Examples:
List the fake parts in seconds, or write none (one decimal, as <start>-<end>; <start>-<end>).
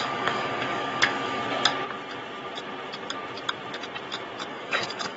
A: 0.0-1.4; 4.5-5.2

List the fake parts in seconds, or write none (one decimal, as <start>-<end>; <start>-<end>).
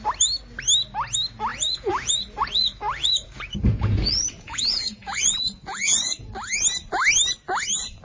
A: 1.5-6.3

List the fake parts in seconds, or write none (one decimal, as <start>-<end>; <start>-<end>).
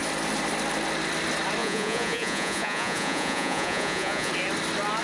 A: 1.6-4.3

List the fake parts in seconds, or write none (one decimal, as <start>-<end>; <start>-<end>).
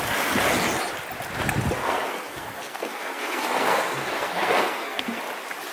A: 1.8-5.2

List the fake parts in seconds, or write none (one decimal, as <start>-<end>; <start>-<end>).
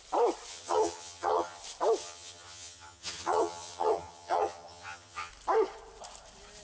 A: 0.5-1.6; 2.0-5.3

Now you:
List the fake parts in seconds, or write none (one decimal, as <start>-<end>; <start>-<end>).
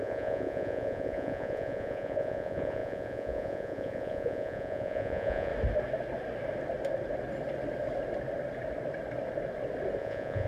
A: 0.0-5.5; 10.0-10.5